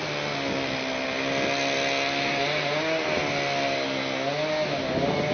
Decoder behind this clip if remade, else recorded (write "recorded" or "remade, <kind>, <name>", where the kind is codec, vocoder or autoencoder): recorded